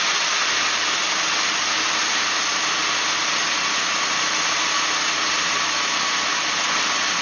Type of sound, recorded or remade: recorded